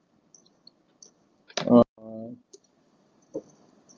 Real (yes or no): yes